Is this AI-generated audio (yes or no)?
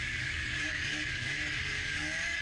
yes